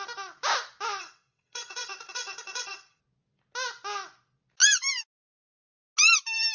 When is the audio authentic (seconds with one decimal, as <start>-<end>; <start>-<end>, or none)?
0.0-1.0; 3.0-6.5